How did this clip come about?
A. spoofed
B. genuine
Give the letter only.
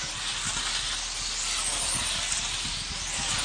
B